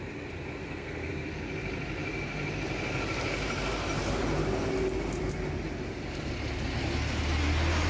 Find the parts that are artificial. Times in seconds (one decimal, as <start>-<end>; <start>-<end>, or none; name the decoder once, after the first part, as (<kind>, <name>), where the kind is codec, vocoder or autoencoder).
0.6-1.1 (codec, SNAC)